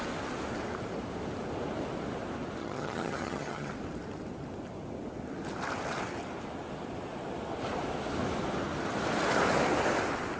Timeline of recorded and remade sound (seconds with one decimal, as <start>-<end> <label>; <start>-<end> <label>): 0.0-2.6 recorded; 2.6-3.7 remade; 3.7-10.4 recorded